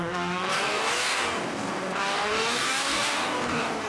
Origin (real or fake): fake